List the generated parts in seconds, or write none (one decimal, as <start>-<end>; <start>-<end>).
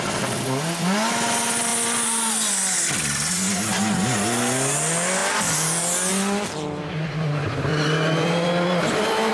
7.7-9.3